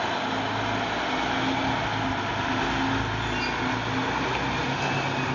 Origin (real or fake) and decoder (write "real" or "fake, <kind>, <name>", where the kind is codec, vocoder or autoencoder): real